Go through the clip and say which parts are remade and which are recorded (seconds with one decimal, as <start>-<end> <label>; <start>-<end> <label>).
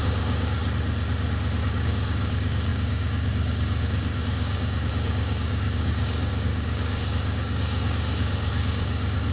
0.0-0.6 remade; 0.6-1.6 recorded; 1.6-9.3 remade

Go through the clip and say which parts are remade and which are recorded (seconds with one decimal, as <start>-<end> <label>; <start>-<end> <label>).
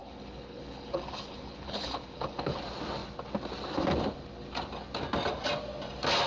0.0-2.6 remade; 2.6-6.3 recorded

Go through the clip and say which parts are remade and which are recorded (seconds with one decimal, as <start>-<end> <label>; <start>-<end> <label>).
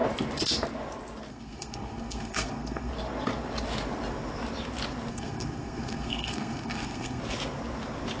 0.0-1.3 recorded; 1.3-2.9 remade; 2.9-5.1 recorded; 5.1-7.2 remade; 7.2-8.2 recorded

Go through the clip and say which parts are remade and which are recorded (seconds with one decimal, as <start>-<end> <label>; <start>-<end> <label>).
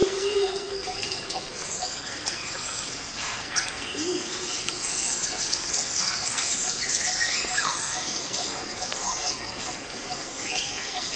0.0-11.2 remade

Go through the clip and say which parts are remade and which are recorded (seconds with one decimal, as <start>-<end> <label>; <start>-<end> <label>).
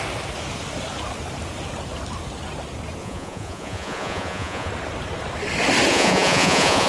0.0-3.0 recorded; 3.0-4.7 remade; 4.7-5.9 recorded; 5.9-6.9 remade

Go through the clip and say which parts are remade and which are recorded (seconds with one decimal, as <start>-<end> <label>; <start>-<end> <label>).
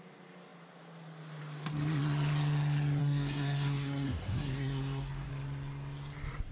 0.0-3.0 recorded; 3.0-5.3 remade; 5.3-6.5 recorded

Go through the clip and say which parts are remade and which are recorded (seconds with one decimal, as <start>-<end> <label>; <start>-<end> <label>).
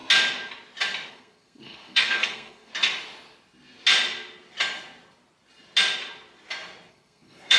0.0-1.1 recorded; 1.1-2.7 remade; 2.7-6.9 recorded; 6.9-7.6 remade